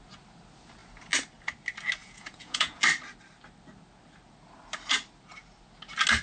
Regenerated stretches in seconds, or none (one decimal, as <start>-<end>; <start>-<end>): 2.0-2.8